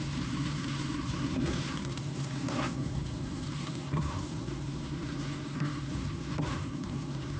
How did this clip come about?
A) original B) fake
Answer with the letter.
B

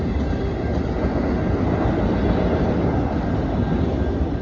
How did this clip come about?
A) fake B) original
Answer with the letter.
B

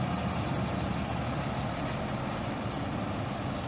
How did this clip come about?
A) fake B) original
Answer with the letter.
B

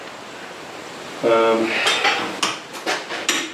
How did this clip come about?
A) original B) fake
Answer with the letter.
A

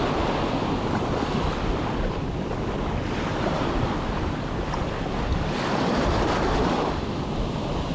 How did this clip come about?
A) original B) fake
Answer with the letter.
A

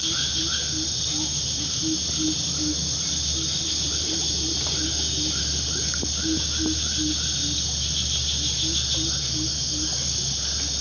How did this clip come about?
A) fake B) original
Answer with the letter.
B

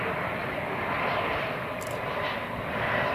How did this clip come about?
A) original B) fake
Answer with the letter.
A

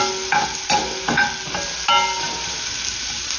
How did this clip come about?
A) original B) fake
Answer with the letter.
A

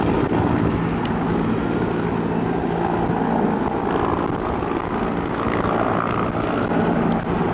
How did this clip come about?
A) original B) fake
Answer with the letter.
A